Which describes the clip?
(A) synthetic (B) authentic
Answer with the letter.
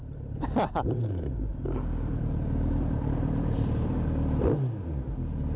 A